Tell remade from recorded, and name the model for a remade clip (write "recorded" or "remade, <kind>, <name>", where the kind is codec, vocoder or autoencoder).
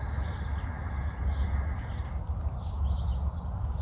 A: recorded